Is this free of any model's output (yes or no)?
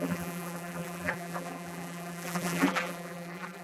no